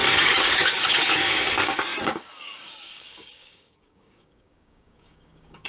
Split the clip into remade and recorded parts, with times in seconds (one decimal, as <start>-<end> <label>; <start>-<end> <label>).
0.0-5.7 remade